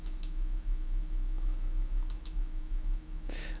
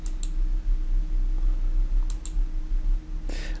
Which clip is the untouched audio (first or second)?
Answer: second